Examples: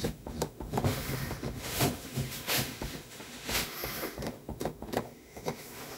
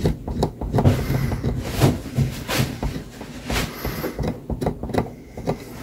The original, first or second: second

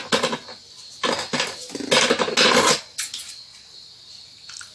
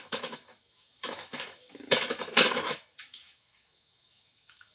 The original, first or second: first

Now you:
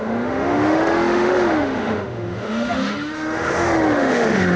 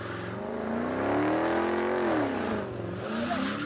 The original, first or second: second